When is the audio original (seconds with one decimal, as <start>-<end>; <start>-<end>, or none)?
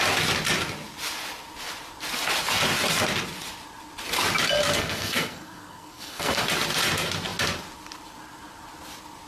0.0-4.7; 6.4-9.3